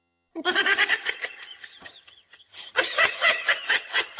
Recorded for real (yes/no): no